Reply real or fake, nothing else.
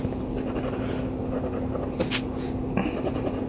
real